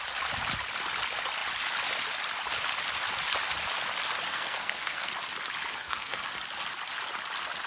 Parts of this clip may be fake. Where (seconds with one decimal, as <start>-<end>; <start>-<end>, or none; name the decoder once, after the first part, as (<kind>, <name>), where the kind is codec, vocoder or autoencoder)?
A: 4.3-5.1 (codec, SNAC); 5.7-6.3

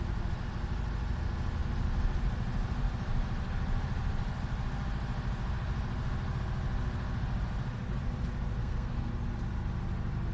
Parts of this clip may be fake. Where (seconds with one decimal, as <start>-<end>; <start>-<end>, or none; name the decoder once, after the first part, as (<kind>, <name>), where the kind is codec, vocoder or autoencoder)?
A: 8.6-9.1 (codec, SNAC)

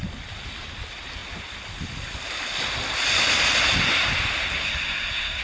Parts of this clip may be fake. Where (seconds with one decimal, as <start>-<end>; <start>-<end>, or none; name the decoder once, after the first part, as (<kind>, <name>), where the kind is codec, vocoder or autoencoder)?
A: 4.5-5.4 (codec, SNAC)

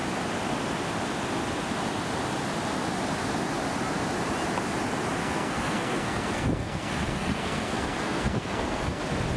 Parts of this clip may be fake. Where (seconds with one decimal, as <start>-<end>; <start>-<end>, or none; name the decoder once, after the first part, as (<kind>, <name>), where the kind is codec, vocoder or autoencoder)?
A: 5.2-9.0 (codec, SNAC)

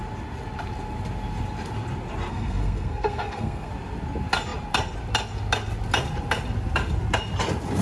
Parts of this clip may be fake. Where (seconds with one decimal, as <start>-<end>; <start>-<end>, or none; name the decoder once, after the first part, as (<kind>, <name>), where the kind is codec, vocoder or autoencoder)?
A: 2.3-3.7 (codec, SNAC)

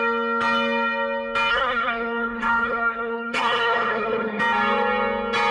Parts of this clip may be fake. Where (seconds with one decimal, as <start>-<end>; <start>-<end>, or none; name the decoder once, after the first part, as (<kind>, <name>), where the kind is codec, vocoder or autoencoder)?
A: 1.5-4.4 (codec, SNAC)

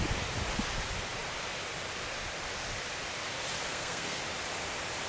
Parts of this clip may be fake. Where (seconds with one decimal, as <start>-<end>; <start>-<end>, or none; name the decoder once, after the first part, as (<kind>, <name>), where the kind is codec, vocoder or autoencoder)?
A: 3.7-4.2 (codec, SNAC)